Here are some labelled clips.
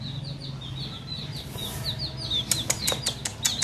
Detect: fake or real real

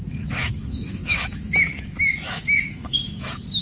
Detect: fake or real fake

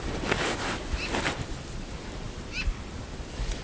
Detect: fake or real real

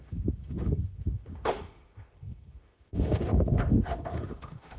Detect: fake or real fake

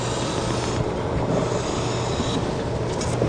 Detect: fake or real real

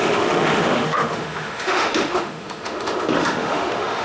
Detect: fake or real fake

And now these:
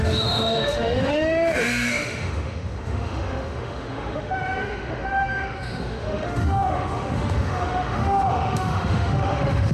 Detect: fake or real fake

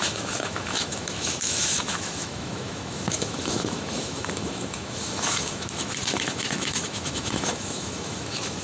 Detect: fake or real fake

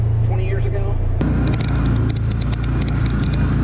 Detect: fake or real real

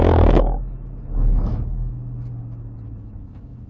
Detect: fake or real fake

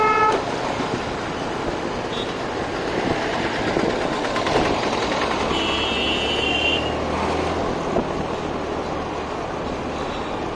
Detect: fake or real real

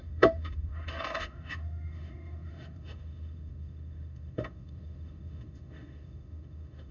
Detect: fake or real fake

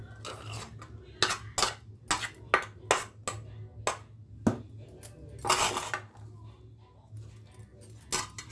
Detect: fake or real real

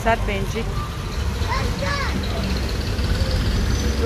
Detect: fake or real real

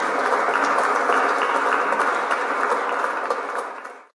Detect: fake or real real